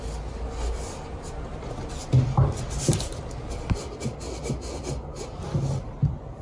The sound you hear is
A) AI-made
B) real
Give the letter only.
B